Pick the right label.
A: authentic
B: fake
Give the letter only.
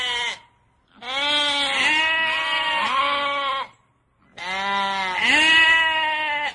A